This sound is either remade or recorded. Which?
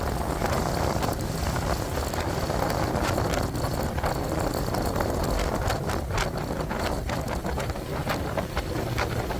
recorded